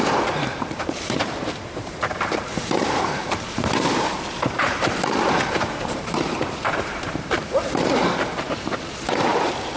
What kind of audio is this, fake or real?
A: fake